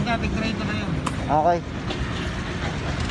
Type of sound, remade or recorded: recorded